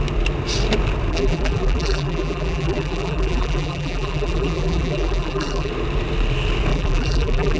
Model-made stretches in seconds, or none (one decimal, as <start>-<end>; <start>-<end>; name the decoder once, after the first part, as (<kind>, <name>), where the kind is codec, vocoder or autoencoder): 1.1-5.7 (vocoder, BigVGAN v2); 6.7-7.6